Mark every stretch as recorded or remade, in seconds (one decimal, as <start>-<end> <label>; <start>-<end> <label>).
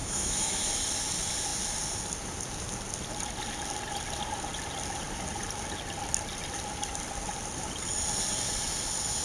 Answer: 0.0-0.7 remade; 0.7-9.2 recorded